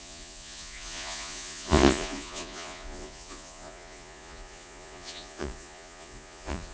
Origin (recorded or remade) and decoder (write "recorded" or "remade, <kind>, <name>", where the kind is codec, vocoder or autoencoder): remade, vocoder, Vocos